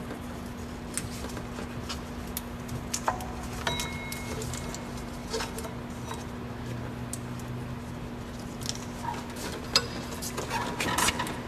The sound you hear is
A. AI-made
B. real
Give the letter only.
B